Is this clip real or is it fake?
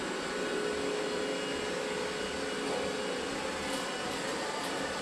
real